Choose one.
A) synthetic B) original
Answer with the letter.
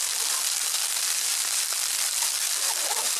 B